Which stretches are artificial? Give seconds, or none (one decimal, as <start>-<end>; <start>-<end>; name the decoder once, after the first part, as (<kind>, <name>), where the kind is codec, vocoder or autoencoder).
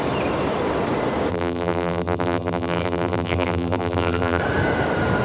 1.3-4.4 (vocoder, BigVGAN v2)